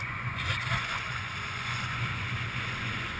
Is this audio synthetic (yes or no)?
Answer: yes